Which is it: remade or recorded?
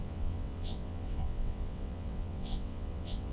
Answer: remade